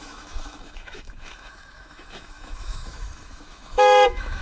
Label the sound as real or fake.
fake